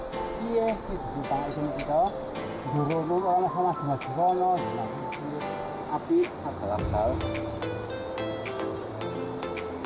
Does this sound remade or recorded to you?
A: recorded